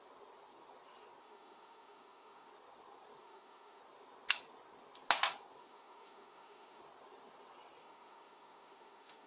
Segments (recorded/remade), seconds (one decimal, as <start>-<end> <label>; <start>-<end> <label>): 0.0-1.2 recorded; 1.2-2.5 remade; 2.5-3.2 recorded; 3.2-3.8 remade; 3.8-5.6 recorded; 5.6-6.8 remade; 6.8-7.8 recorded; 7.8-9.3 remade